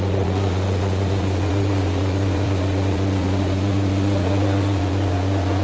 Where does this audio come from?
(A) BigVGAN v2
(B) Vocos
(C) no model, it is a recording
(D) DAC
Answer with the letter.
B